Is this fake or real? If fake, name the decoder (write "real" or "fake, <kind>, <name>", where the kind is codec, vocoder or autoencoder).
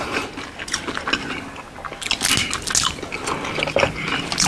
real